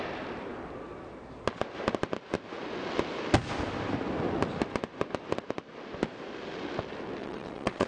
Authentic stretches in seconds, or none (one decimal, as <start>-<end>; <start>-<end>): 0.0-7.2